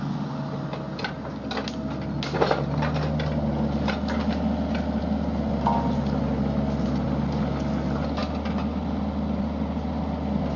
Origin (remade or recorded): recorded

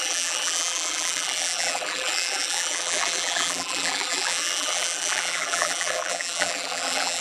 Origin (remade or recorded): remade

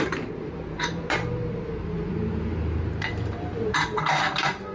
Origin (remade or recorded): remade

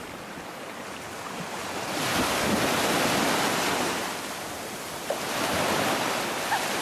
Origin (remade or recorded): recorded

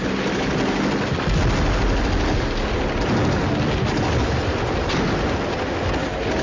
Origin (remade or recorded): recorded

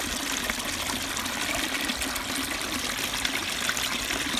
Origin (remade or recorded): recorded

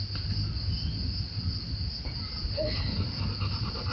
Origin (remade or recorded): recorded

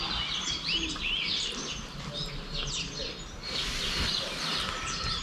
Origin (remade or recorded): recorded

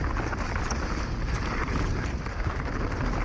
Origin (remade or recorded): recorded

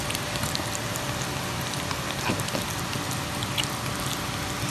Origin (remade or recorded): recorded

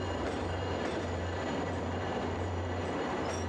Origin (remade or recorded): remade